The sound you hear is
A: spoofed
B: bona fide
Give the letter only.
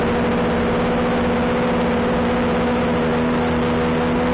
B